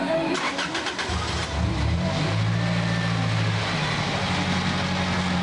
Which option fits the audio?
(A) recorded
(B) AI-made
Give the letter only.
A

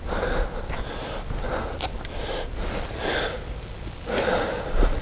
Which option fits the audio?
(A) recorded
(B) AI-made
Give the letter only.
A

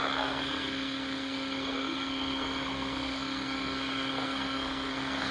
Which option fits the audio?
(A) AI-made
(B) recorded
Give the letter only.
A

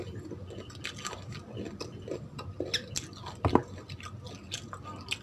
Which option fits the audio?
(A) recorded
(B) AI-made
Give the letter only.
A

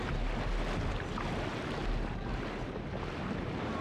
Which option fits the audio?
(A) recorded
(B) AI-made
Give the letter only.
A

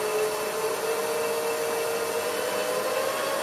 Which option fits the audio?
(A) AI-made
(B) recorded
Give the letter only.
B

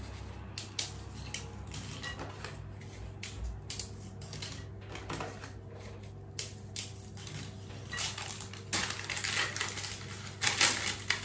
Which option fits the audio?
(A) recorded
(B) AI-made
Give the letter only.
A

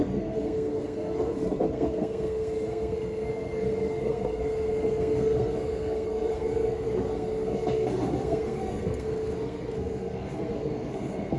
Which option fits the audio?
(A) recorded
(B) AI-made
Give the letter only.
B